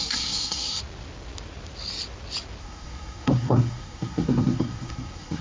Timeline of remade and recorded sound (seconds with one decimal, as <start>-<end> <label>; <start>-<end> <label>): 0.0-0.8 remade; 0.8-2.6 recorded; 2.6-5.4 remade